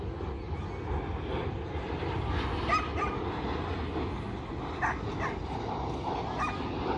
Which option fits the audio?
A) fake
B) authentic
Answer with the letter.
B